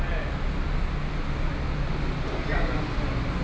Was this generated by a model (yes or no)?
no